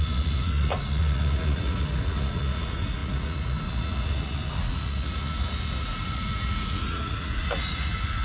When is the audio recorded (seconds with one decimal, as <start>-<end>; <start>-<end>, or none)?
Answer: none